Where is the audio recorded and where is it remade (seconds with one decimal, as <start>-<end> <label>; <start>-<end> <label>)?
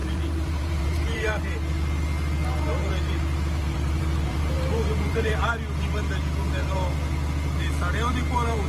0.0-1.4 remade; 1.4-3.6 recorded; 3.6-5.3 remade; 5.3-8.7 recorded